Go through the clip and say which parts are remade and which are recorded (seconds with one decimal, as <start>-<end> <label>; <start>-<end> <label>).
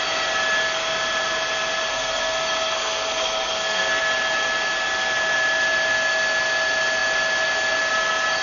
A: 0.0-1.9 recorded; 1.9-4.0 remade; 4.0-8.4 recorded